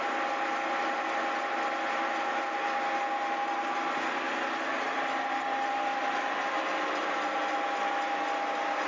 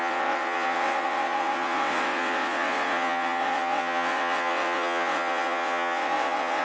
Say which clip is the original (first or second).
first